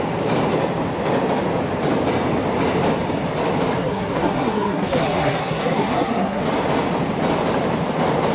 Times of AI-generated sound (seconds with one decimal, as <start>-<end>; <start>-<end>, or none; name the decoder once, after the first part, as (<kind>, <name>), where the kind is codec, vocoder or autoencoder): 3.8-6.4 (codec, SNAC)